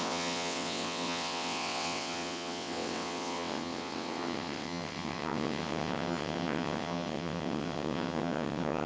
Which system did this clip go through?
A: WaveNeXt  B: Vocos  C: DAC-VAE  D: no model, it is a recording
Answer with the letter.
A